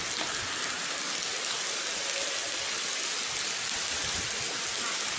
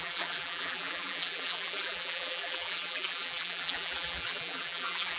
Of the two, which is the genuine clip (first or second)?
first